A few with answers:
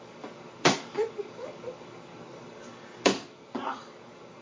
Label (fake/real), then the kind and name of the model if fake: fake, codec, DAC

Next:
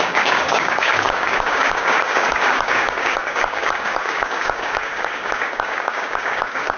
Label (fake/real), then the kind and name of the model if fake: fake, codec, DAC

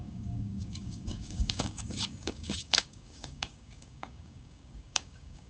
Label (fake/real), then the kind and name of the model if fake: fake, codec, DAC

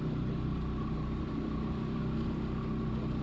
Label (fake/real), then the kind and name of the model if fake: real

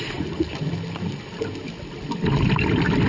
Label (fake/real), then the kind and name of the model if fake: real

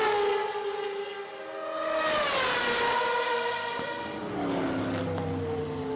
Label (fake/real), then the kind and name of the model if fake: real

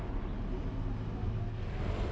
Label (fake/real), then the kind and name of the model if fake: real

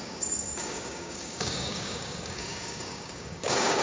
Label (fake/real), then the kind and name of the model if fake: fake, codec, DAC